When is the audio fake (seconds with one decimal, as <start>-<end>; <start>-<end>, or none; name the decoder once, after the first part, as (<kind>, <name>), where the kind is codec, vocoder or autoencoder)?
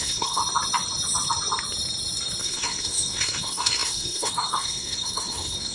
0.0-0.4 (codec, SNAC); 2.4-5.7